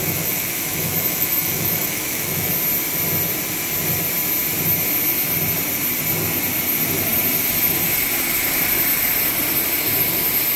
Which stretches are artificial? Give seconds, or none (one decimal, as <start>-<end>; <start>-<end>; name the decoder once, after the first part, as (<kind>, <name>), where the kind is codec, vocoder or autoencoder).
0.0-2.5 (autoencoder, DAC-VAE)